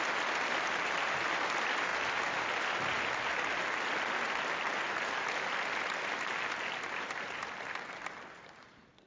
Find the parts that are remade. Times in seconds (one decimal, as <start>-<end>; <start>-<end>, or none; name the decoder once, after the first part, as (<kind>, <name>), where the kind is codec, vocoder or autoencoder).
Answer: none